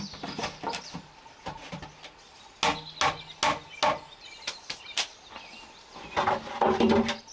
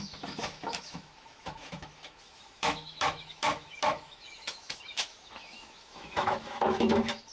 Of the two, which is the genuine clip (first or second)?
first